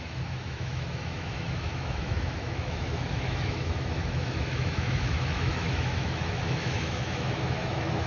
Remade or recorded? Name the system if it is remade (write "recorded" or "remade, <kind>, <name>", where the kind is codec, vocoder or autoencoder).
remade, autoencoder, DAC-VAE